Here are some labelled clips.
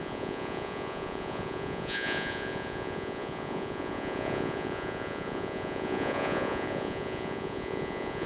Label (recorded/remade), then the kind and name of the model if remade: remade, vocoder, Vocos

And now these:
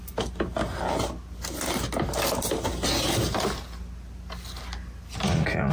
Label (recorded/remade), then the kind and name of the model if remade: recorded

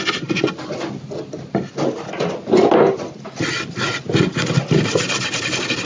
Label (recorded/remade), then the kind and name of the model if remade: recorded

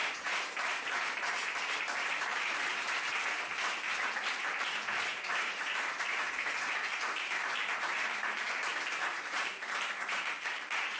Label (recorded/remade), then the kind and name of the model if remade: remade, vocoder, BigVGAN v2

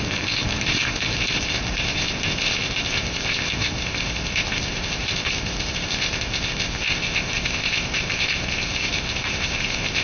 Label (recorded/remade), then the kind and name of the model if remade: remade, codec, ZipCodec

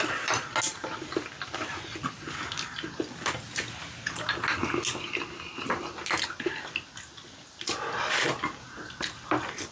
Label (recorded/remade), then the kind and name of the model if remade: recorded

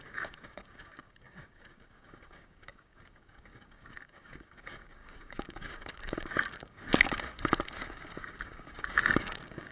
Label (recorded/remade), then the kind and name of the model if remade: remade, codec, DAC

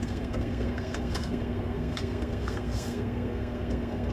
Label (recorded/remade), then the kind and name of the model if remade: remade, codec, SNAC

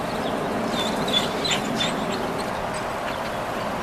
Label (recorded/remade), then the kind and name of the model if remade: recorded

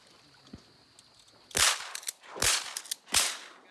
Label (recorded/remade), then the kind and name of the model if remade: recorded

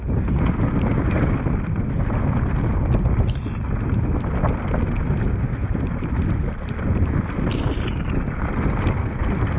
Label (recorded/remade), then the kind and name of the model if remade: recorded